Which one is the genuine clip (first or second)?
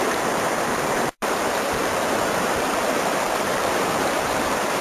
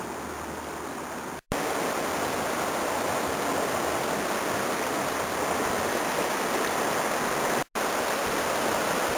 second